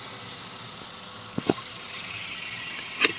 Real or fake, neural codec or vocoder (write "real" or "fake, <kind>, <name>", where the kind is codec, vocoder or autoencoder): real